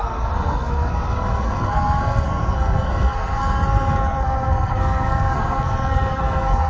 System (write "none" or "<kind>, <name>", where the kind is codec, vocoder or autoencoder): codec, SNAC